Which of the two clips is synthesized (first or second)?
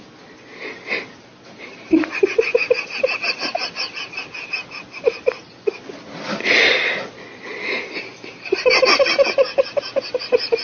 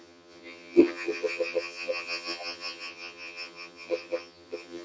second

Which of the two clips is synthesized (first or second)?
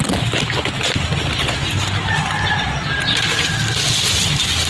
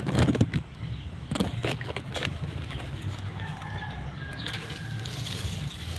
second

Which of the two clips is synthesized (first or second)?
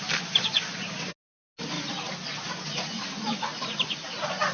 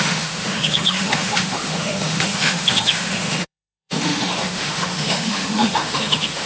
second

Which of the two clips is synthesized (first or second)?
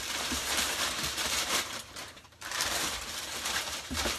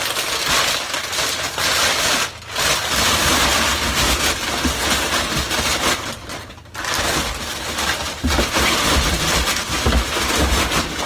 first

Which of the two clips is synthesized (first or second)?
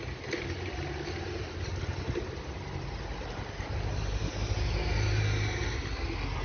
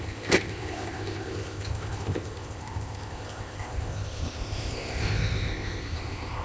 second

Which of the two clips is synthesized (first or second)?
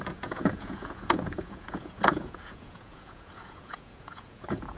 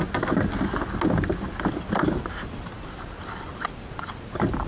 first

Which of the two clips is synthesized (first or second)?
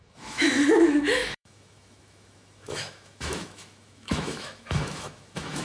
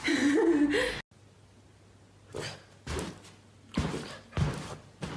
first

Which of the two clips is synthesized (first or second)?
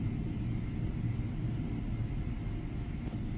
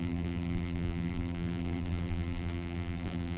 second